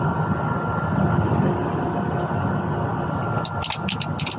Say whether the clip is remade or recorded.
recorded